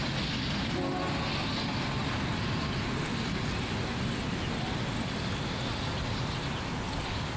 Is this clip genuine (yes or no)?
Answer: yes